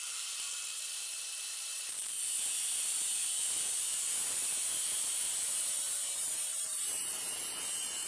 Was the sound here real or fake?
fake